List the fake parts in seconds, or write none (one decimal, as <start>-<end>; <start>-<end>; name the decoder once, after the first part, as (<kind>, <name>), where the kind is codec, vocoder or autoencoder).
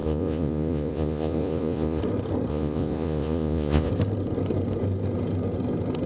0.0-2.0 (vocoder, Vocos); 2.5-3.9